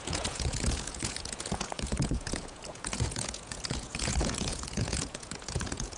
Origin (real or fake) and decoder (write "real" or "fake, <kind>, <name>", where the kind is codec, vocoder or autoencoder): fake, vocoder, Vocos